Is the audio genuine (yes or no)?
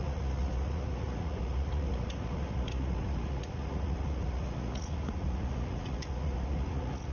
no